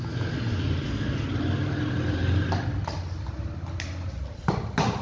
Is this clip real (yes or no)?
yes